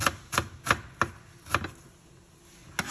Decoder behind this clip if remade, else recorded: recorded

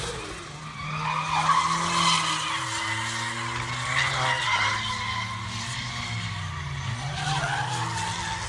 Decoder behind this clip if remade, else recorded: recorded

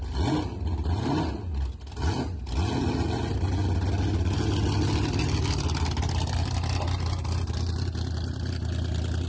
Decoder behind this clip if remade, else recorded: recorded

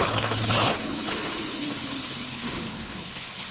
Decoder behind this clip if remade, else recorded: remade, codec, HILCodec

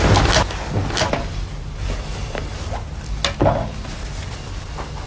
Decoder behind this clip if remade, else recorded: recorded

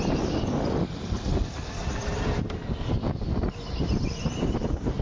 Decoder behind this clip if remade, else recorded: recorded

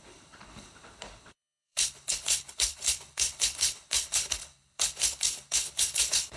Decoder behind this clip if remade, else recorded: remade, codec, HILCodec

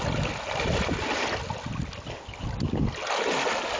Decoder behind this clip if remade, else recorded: recorded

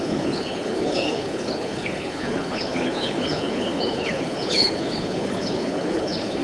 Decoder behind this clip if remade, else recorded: remade, codec, HILCodec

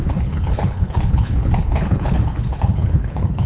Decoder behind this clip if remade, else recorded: remade, codec, HILCodec